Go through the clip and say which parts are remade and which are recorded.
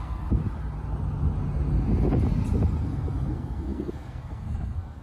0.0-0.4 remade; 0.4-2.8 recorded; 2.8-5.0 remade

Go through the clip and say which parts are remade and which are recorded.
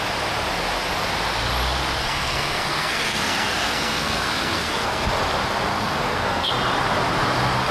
0.0-2.0 recorded; 2.0-5.1 remade; 5.1-5.7 recorded; 5.7-6.5 remade; 6.5-7.7 recorded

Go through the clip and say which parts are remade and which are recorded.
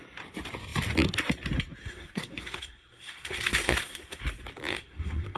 0.0-1.8 recorded; 1.8-4.2 remade; 4.2-4.7 recorded; 4.7-5.4 remade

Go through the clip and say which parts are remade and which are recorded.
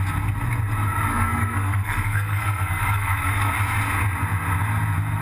0.0-1.1 recorded; 1.1-3.5 remade; 3.5-5.2 recorded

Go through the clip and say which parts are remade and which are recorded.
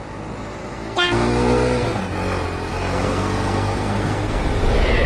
0.0-0.6 recorded; 0.6-2.0 remade; 2.0-2.7 recorded; 2.7-4.4 remade; 4.4-5.1 recorded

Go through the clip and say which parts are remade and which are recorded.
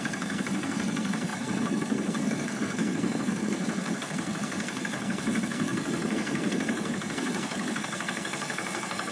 0.0-9.1 remade